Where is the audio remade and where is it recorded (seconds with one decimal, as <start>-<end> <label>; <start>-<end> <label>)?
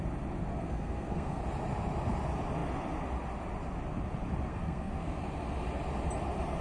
0.0-0.6 recorded; 0.6-1.4 remade; 1.4-4.5 recorded; 4.5-5.1 remade; 5.1-6.6 recorded